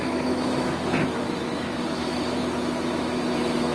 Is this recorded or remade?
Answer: remade